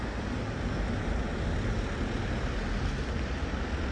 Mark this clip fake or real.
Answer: real